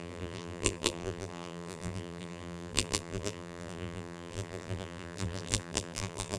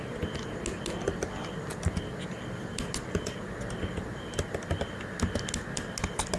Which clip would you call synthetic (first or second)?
first